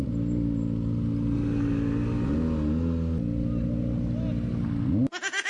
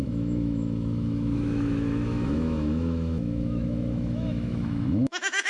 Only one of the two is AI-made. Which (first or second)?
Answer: second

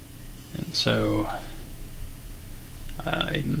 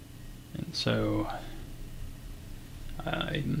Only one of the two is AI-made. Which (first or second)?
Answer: first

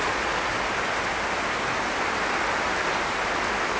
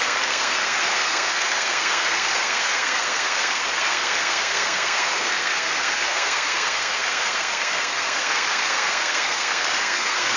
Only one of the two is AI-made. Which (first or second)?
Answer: second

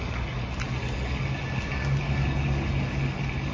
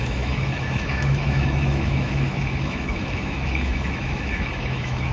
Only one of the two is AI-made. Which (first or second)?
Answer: second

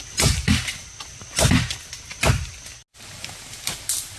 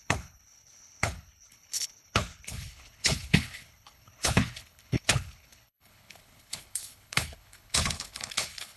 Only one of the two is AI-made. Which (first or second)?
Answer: second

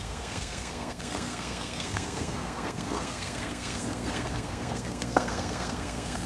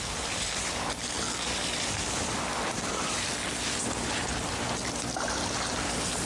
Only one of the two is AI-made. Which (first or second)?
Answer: first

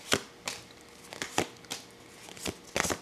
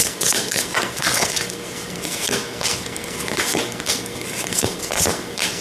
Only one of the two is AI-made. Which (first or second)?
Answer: second